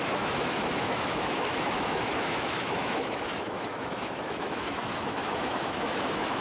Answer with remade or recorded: remade